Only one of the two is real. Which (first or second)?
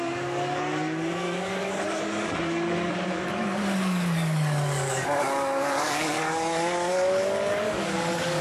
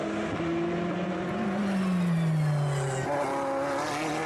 second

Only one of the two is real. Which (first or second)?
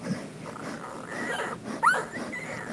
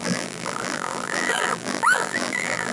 first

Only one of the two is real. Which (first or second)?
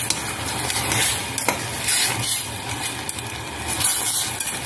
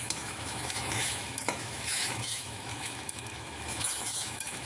first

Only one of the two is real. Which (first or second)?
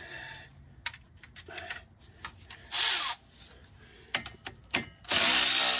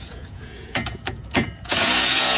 first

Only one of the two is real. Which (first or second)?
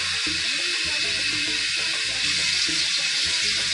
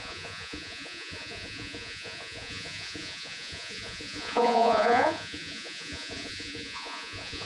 first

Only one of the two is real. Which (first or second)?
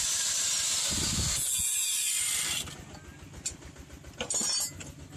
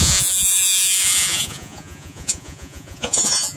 first